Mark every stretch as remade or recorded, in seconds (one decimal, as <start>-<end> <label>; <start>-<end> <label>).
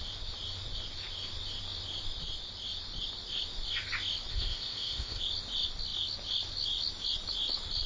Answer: 0.0-4.3 recorded; 4.3-5.2 remade; 5.2-7.9 recorded